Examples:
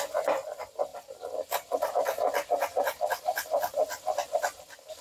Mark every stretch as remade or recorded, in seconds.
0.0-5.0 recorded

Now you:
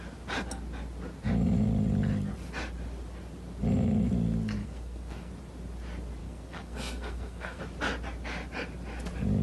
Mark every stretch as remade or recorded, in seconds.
0.0-4.6 recorded; 4.6-5.3 remade; 5.3-6.2 recorded; 6.2-7.6 remade; 7.6-9.4 recorded

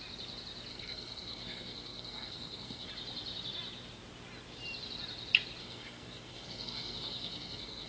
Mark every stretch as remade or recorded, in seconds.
0.0-0.7 recorded; 0.7-2.9 remade; 2.9-5.6 recorded; 5.6-7.9 remade

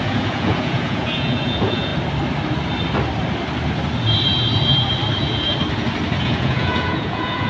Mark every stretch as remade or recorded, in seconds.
0.0-1.9 remade; 1.9-6.2 recorded; 6.2-7.5 remade

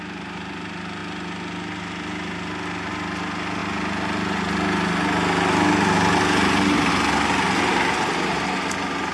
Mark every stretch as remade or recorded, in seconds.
0.0-9.1 recorded

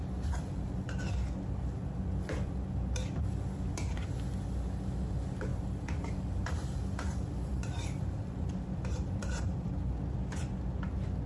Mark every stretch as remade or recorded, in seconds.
0.0-5.5 recorded; 5.5-9.8 remade; 9.8-11.3 recorded

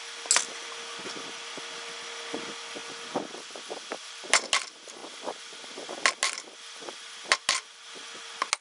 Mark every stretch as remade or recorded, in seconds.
0.0-8.6 recorded